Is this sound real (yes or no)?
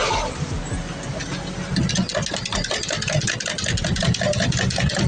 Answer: yes